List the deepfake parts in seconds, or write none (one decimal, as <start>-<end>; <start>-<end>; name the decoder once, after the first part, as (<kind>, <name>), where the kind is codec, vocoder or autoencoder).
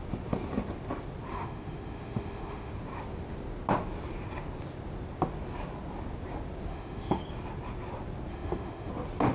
1.3-2.7 (autoencoder, DAC-VAE); 6.7-7.2; 8.3-8.9